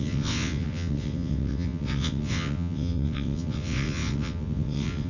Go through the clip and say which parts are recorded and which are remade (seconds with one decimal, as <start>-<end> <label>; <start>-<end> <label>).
0.0-5.1 remade